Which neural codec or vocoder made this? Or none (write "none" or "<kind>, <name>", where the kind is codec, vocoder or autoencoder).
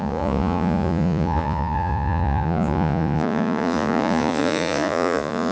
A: vocoder, Vocos